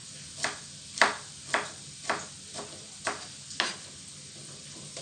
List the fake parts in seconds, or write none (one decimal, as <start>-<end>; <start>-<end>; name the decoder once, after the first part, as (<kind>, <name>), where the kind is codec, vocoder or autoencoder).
0.0-3.0 (vocoder, BigVGAN v2); 3.7-5.0